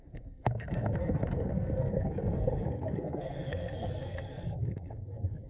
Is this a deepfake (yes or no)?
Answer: yes